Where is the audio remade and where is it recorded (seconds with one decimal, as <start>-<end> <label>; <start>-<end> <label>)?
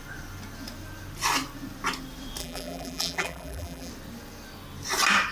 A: 0.0-2.4 recorded; 2.4-3.9 remade; 3.9-5.3 recorded